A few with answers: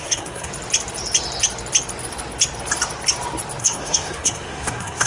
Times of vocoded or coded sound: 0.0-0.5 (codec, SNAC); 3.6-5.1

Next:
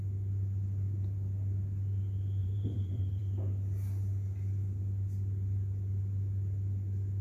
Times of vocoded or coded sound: 2.4-3.2 (vocoder, BigVGAN v2)

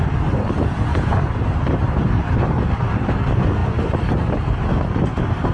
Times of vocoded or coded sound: 0.9-3.1 (vocoder, BigVGAN v2)

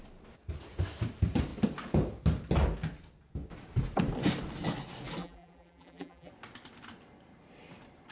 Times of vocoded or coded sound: 5.2-6.3 (vocoder, BigVGAN v2)